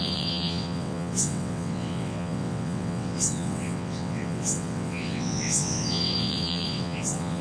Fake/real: fake